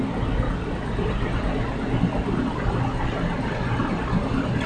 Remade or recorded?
recorded